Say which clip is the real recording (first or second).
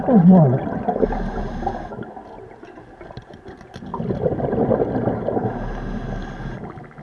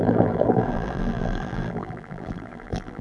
first